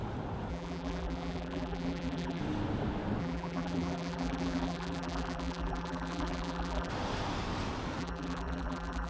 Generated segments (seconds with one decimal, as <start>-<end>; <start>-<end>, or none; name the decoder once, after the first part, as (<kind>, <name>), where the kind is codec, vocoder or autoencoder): 0.5-2.4 (vocoder, BigVGAN v2); 3.2-6.9; 8.0-9.1